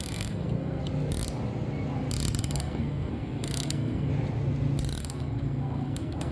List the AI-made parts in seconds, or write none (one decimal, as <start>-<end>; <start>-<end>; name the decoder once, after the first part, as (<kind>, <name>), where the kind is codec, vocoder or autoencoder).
0.0-0.8 (codec, SNAC); 2.4-4.1; 5.0-6.3